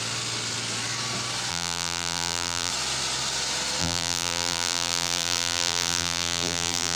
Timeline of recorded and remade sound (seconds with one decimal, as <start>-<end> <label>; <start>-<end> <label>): 0.0-1.5 recorded; 1.5-2.7 remade; 2.7-3.8 recorded; 3.8-7.0 remade